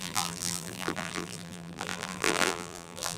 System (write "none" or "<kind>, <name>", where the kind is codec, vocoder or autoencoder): vocoder, BigVGAN v2